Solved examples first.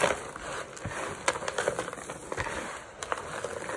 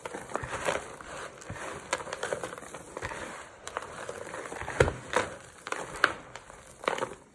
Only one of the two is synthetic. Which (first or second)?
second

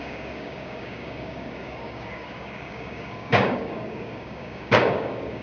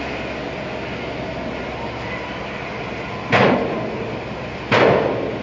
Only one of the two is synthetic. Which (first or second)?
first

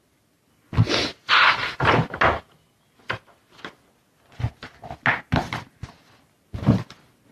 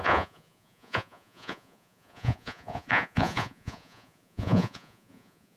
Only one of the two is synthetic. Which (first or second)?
second